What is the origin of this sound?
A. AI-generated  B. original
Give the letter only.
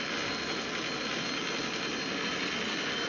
B